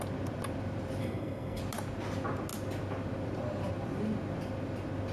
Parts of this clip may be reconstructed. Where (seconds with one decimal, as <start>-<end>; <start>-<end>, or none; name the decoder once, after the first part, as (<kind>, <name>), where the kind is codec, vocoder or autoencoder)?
1.0-1.6 (codec, SNAC)